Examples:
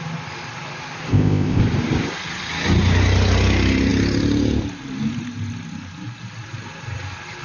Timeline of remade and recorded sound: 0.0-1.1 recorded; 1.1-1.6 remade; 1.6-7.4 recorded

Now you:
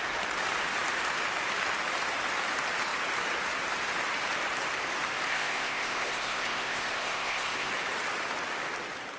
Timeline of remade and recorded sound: 0.0-5.3 recorded; 5.3-7.7 remade; 7.7-9.2 recorded